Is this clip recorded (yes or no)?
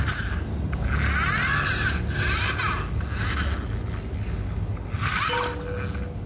yes